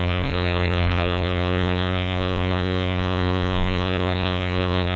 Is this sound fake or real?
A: fake